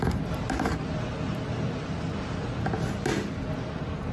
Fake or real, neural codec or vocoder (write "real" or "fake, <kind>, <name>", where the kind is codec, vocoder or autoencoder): real